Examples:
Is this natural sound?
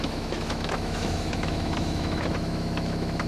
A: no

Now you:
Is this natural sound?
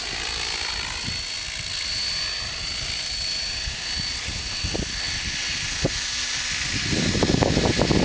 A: yes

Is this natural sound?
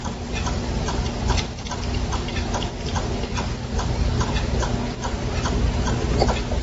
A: yes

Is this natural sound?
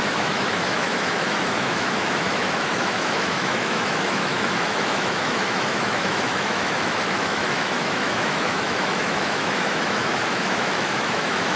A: no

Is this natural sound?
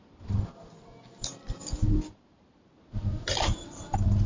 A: yes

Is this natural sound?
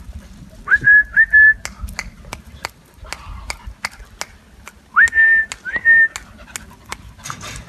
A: yes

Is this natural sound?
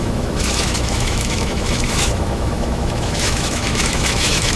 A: no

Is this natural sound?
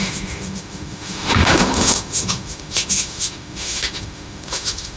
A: no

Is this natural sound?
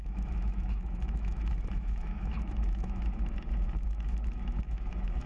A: no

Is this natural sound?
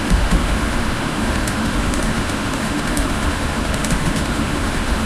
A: no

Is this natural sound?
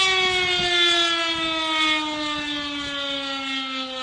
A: yes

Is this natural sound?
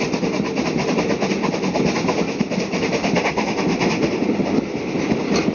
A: yes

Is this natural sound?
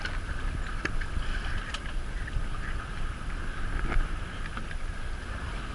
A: yes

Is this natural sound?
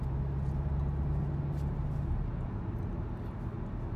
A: yes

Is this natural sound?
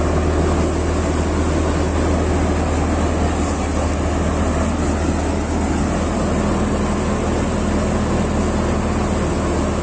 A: yes